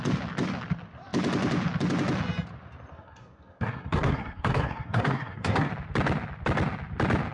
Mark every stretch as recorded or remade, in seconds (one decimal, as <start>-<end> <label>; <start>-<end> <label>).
0.0-2.9 recorded; 2.9-5.7 remade; 5.7-7.3 recorded